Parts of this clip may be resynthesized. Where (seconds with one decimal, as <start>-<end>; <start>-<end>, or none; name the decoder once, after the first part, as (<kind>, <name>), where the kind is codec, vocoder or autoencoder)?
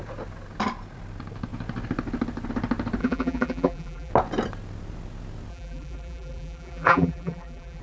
3.0-4.1 (vocoder, BigVGAN v2); 5.5-7.8